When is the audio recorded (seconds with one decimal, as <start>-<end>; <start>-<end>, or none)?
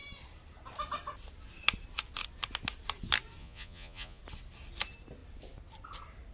0.0-3.4; 4.2-6.3